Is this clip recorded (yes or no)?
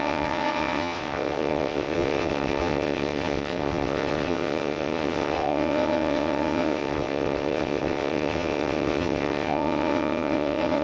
no